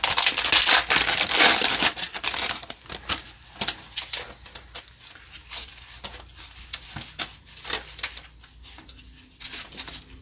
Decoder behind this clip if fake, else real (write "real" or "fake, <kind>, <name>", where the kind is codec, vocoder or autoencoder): real